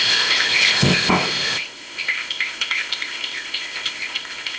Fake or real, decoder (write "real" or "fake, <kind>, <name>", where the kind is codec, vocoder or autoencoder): fake, codec, ZipCodec